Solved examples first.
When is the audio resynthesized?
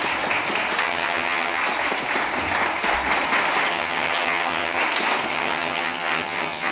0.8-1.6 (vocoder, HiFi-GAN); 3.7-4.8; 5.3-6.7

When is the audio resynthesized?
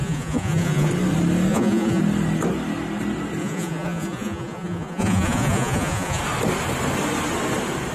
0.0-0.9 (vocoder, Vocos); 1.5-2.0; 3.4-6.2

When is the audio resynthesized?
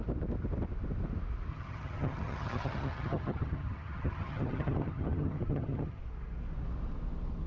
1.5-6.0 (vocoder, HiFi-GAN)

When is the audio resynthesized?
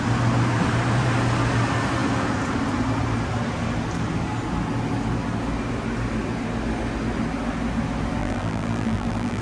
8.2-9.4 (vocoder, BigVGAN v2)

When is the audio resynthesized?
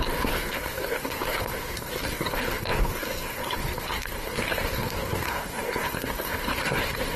0.0-7.2 (codec, SNAC)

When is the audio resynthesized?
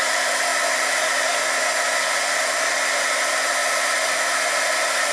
none